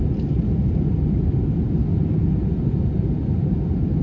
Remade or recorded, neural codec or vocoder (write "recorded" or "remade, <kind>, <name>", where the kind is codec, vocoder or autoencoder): recorded